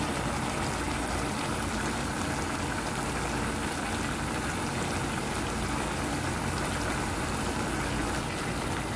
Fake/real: real